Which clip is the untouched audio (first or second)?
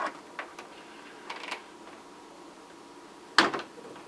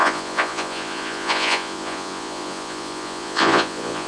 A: first